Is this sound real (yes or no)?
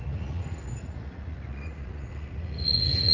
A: no